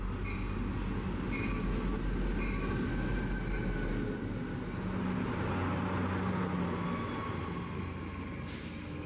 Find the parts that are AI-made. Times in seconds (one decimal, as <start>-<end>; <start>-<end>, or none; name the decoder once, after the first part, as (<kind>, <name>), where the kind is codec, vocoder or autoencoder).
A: none